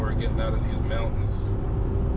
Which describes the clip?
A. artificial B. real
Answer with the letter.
B